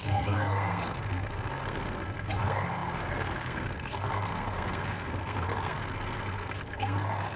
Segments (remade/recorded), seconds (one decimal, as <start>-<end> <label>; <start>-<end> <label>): 0.0-7.4 remade